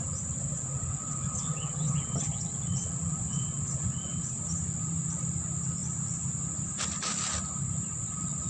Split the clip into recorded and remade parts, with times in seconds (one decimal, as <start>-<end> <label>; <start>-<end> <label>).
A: 0.0-0.4 recorded; 0.4-4.4 remade; 4.4-8.5 recorded